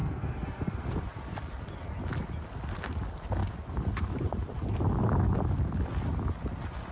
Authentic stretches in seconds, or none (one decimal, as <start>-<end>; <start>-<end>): 0.9-6.9